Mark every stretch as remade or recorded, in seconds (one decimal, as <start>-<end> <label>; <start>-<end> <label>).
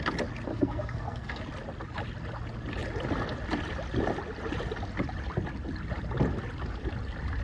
0.0-0.5 recorded; 0.5-1.4 remade; 1.4-7.4 recorded